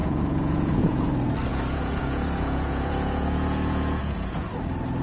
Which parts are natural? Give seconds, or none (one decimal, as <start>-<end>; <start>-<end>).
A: 1.1-1.5; 4.5-5.0